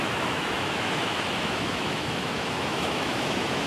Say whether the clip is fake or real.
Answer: fake